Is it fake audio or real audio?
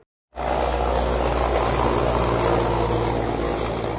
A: real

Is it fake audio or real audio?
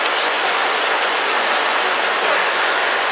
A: fake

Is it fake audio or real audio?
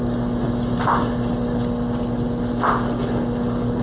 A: real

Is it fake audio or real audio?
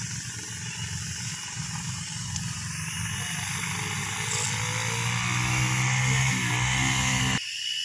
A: real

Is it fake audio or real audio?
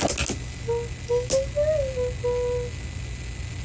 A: real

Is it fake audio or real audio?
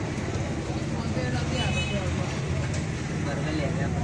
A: real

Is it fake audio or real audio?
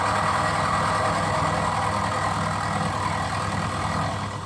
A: real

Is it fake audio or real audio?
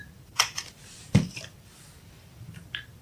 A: fake